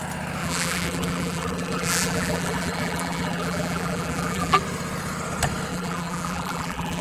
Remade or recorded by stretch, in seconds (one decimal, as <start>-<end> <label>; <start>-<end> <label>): 0.0-0.4 recorded; 0.4-4.6 remade; 4.6-5.7 recorded; 5.7-7.0 remade

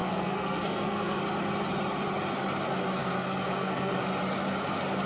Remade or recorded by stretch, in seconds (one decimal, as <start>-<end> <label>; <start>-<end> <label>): 0.0-1.2 remade; 1.2-3.0 recorded; 3.0-4.0 remade; 4.0-5.1 recorded

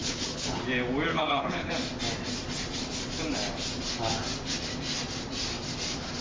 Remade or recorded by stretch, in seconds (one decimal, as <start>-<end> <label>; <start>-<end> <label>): 0.0-0.6 remade; 0.6-1.1 recorded; 1.1-1.7 remade; 1.7-6.2 recorded

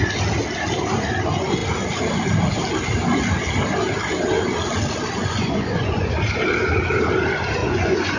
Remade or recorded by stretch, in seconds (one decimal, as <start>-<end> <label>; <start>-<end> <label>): 0.0-5.2 recorded; 5.2-6.1 remade; 6.1-7.6 recorded; 7.6-8.2 remade

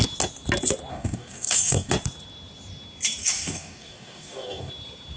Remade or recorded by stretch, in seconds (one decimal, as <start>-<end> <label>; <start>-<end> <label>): 0.0-0.9 recorded; 0.9-1.9 remade; 1.9-3.2 recorded; 3.2-4.7 remade; 4.7-5.2 recorded

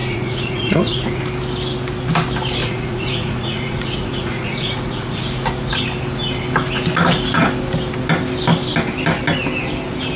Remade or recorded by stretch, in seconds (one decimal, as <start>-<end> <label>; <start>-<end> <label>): 0.0-1.2 remade; 1.2-2.6 recorded; 2.6-5.2 remade; 5.2-10.2 recorded

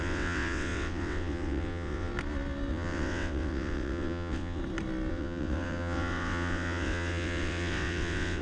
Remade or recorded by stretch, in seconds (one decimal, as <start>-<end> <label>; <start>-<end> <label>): 0.0-2.1 remade; 2.1-2.7 recorded; 2.7-4.6 remade; 4.6-5.1 recorded; 5.1-8.4 remade

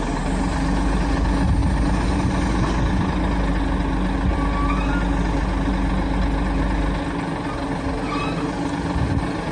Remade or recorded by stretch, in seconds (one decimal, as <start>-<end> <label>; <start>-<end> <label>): 0.0-9.5 recorded